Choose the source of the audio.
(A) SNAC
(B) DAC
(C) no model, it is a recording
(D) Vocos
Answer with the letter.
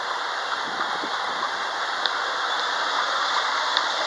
C